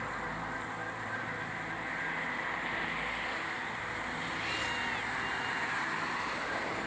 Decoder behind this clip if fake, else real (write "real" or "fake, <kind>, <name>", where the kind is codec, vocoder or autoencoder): real